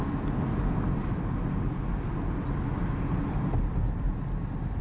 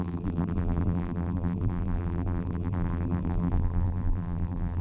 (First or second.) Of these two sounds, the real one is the first